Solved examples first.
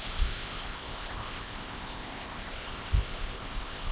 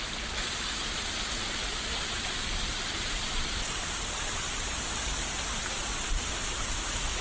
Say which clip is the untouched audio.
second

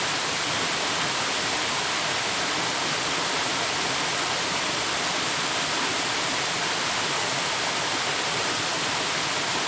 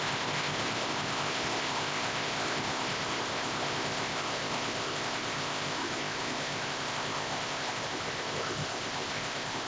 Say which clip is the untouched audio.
first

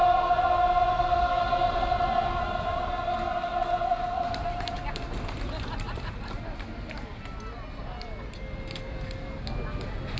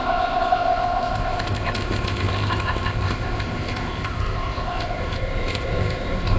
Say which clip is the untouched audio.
first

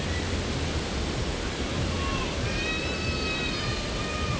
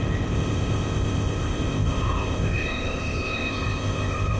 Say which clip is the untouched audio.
first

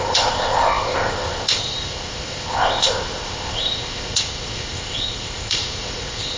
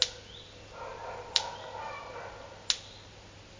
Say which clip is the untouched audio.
second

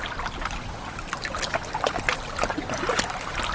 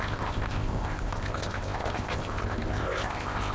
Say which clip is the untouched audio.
first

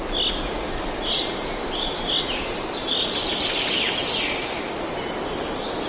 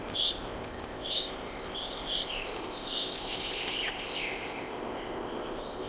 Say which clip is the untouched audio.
first